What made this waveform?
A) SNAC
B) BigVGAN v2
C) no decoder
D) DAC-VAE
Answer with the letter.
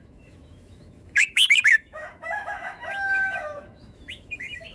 D